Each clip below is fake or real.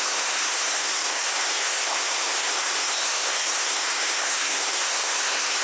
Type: fake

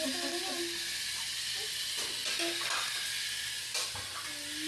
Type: real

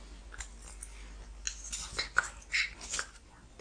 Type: real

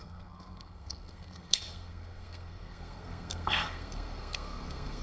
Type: fake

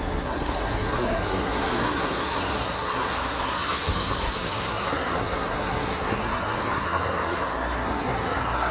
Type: fake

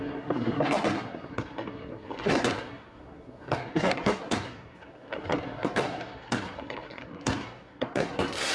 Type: fake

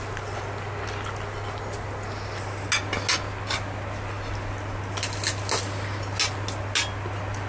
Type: real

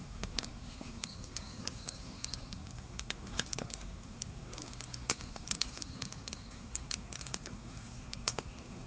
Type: fake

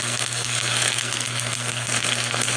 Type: fake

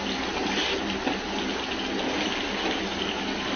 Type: real